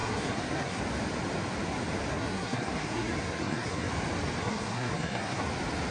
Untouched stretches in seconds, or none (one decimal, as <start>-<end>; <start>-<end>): 0.8-2.1; 3.9-4.4; 5.5-5.9